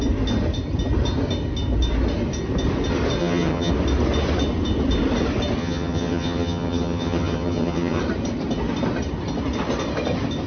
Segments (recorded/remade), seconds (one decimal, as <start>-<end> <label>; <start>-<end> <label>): 0.0-3.2 recorded; 3.2-3.7 remade; 3.7-5.6 recorded; 5.6-8.0 remade; 8.0-10.5 recorded